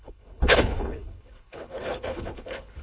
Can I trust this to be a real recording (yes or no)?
no